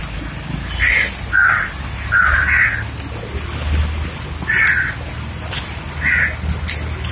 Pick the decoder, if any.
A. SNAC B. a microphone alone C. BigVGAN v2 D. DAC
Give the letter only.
B